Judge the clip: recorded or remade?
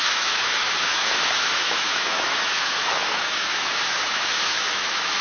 remade